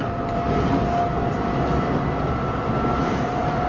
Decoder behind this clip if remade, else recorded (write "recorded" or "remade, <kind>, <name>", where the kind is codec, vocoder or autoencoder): recorded